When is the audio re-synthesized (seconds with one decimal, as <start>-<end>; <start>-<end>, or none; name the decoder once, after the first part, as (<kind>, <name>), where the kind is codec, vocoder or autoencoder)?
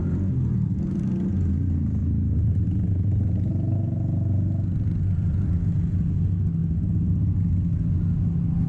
0.0-1.0 (vocoder, BigVGAN v2); 2.0-3.5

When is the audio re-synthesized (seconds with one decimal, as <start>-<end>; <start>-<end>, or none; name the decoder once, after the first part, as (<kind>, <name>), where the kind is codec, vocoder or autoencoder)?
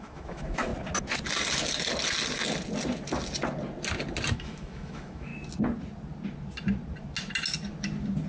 0.0-0.7 (autoencoder, DAC-VAE); 4.3-5.3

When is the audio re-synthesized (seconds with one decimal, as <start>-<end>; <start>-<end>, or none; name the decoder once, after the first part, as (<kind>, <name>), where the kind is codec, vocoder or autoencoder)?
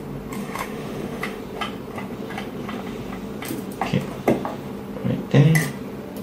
0.4-1.4 (autoencoder, DAC-VAE)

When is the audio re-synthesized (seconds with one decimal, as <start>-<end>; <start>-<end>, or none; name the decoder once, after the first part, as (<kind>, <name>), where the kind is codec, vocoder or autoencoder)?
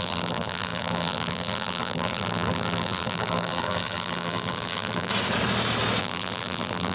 0.0-5.1 (vocoder, BigVGAN v2); 6.0-6.9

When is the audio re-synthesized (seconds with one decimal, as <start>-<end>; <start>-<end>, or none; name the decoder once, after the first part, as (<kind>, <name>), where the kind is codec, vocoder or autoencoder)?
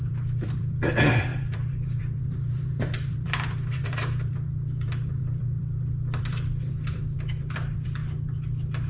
0.0-8.0 (vocoder, BigVGAN v2)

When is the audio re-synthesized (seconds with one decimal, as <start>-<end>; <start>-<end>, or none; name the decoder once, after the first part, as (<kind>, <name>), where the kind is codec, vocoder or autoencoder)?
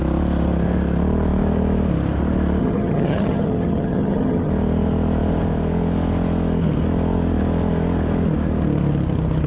2.6-4.5 (vocoder, HiFi-GAN)